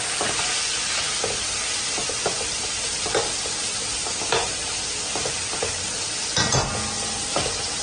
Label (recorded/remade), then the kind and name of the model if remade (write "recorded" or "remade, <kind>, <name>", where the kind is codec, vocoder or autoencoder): recorded